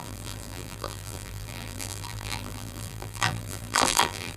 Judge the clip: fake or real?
fake